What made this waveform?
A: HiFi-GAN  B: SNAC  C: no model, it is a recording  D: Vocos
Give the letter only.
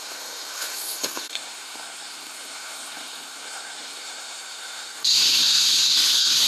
B